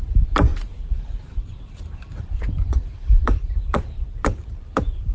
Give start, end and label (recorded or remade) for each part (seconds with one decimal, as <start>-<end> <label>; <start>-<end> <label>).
0.0-5.1 remade